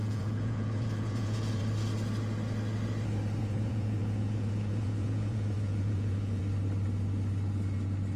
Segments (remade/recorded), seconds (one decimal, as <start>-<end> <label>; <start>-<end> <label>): 0.0-1.6 remade; 1.6-3.4 recorded; 3.4-6.4 remade; 6.4-8.2 recorded